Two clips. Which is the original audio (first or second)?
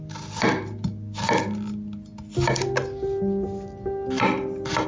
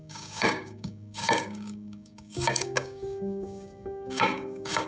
first